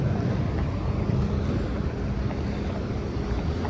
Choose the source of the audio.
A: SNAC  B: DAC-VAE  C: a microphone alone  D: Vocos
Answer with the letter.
C